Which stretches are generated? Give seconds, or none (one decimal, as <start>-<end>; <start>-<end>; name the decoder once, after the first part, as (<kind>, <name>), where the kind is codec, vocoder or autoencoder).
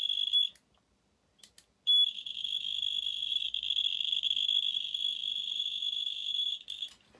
none